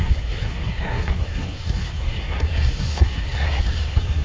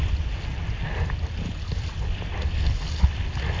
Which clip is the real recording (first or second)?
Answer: second